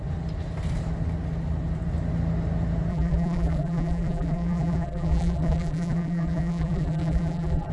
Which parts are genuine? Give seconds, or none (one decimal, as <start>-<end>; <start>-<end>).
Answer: 0.0-2.9